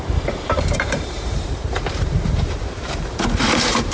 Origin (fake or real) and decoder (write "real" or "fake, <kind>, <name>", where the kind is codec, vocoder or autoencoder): fake, vocoder, BigVGAN v2